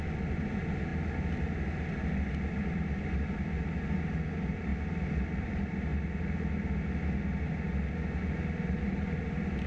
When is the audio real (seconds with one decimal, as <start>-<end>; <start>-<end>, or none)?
0.9-2.9; 4.7-5.3; 5.9-8.8